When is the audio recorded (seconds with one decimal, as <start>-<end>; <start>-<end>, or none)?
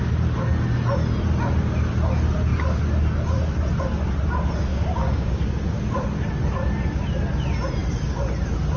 0.0-4.7; 5.5-8.8